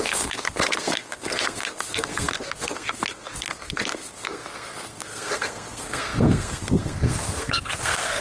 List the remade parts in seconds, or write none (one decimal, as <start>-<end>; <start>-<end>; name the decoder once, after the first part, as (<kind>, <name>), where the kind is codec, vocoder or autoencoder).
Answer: 0.0-8.2 (codec, SNAC)